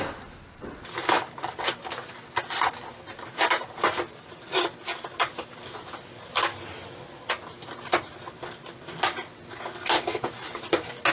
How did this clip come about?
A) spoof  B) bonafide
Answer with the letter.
B